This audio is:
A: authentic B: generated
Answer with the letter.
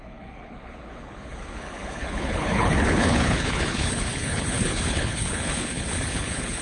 B